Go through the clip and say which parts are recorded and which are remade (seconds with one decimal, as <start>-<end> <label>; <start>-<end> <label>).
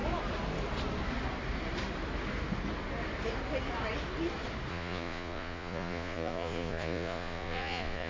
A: 0.0-4.7 recorded; 4.7-8.1 remade